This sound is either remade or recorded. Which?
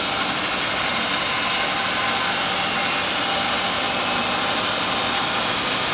recorded